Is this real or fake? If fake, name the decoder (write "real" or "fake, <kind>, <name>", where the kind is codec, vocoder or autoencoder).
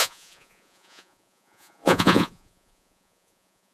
fake, vocoder, Vocos